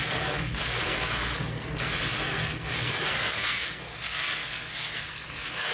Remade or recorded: remade